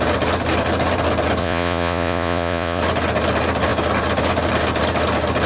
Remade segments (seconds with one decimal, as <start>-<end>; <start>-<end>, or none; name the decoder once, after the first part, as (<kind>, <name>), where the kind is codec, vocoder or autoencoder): 1.4-2.8 (vocoder, Vocos)